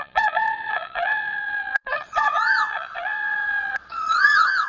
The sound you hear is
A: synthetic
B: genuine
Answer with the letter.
A